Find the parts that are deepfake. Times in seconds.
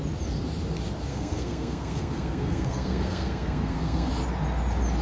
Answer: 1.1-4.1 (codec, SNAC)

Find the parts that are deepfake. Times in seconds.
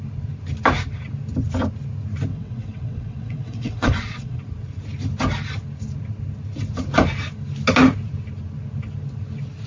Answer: 2.3-4.4 (vocoder, WaveNeXt)